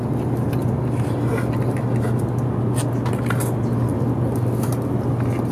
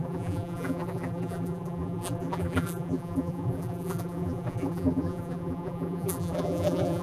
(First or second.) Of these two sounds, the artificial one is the second